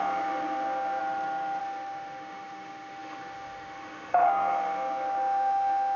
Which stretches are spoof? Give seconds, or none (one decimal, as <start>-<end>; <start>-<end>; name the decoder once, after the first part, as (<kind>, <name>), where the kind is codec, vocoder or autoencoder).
0.0-1.0 (autoencoder, DAC-VAE); 1.6-6.0